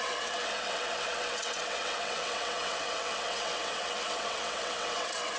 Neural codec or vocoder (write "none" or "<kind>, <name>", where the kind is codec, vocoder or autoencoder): vocoder, WaveNeXt